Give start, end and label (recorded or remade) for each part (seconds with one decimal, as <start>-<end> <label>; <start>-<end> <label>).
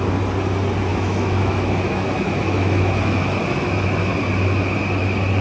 0.0-0.9 recorded; 0.9-4.1 remade; 4.1-5.4 recorded